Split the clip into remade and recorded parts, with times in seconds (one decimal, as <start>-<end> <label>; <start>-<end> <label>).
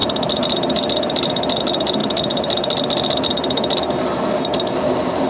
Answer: 0.0-5.3 recorded